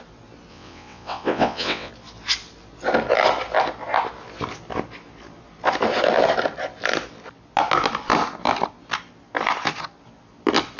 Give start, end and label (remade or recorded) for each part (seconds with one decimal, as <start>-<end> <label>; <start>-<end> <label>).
0.0-0.5 recorded; 0.5-1.9 remade; 1.9-10.8 recorded